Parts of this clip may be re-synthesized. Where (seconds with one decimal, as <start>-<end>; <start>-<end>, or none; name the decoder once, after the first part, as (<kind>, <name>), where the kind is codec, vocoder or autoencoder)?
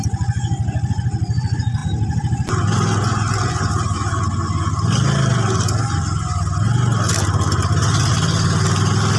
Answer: none